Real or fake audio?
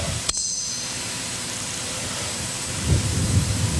fake